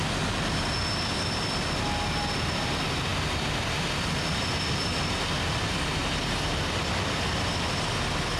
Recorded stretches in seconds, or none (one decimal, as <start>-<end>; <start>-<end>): 0.0-8.4